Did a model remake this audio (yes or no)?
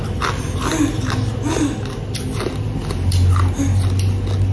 no